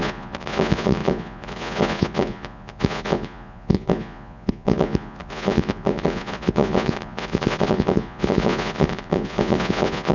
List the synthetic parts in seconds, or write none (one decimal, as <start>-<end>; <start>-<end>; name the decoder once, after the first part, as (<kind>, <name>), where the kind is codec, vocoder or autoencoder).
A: 0.0-10.1 (vocoder, Vocos)